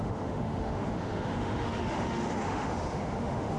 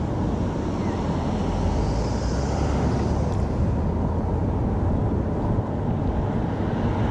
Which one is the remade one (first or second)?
first